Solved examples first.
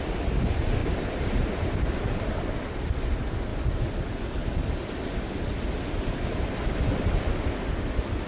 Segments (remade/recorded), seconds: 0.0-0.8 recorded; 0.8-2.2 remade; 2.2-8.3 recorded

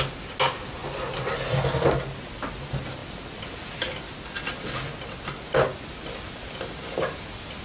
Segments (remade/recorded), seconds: 0.0-0.8 recorded; 0.8-1.3 remade; 1.3-7.6 recorded

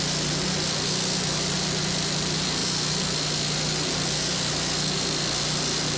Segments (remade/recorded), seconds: 0.0-6.0 recorded

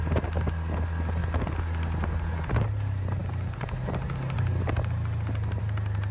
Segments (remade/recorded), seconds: 0.0-6.1 recorded